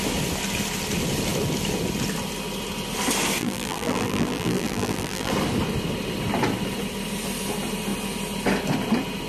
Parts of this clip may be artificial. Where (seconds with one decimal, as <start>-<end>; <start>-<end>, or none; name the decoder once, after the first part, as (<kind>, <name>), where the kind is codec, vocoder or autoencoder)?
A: 3.4-5.3 (vocoder, BigVGAN v2)

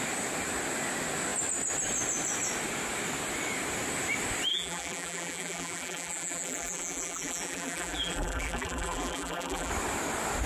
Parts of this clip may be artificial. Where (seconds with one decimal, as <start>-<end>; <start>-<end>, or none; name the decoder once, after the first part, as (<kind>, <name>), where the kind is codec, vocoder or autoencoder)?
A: 4.5-9.7 (vocoder, BigVGAN v2)

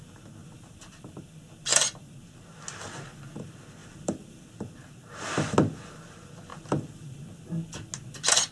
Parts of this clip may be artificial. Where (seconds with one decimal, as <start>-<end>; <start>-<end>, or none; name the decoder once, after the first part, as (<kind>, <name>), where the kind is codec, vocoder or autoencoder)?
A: 0.4-1.2 (vocoder, BigVGAN v2); 3.8-4.6; 6.5-7.2

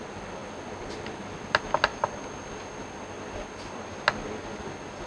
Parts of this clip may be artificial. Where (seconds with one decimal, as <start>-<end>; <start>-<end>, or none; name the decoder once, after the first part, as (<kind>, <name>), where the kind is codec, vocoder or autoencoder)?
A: none

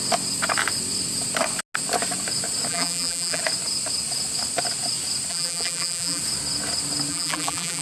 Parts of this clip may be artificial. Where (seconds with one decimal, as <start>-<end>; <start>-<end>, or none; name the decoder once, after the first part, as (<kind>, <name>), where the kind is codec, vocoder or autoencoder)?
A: 2.7-3.4 (vocoder, BigVGAN v2); 5.3-6.2; 7.1-7.8